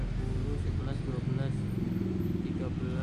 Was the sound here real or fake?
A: real